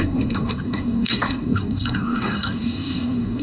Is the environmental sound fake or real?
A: fake